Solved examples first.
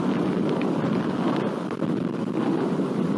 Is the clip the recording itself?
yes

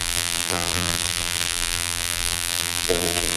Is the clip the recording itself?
no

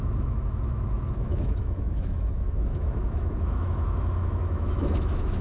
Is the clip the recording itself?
no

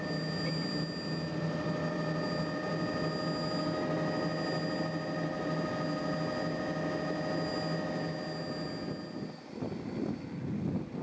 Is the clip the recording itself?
yes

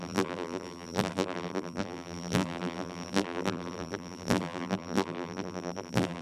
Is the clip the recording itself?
no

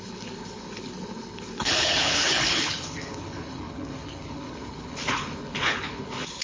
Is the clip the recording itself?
no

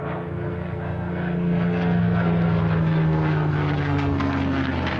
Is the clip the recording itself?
no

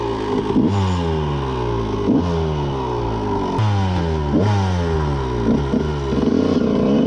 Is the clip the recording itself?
yes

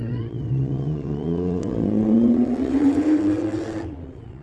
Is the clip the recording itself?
no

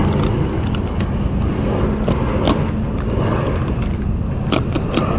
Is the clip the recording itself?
yes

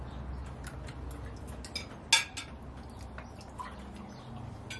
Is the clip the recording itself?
yes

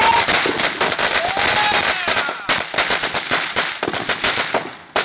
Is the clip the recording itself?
yes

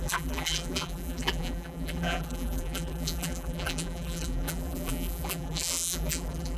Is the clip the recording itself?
no